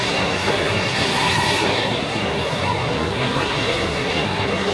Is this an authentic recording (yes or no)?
no